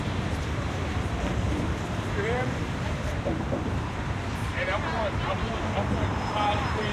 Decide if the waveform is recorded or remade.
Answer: remade